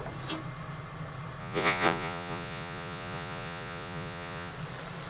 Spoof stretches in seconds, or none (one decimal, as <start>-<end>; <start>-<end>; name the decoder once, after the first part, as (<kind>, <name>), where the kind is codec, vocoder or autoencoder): 1.4-4.5 (vocoder, Vocos)